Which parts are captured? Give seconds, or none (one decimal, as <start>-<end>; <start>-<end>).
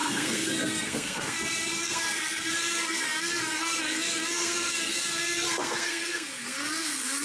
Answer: none